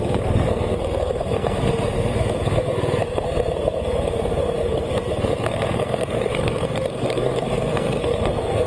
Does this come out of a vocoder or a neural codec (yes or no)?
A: yes